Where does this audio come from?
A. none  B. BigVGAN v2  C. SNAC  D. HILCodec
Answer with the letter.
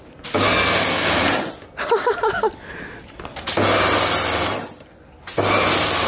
A